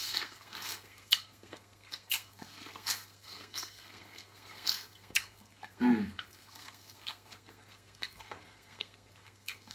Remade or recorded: remade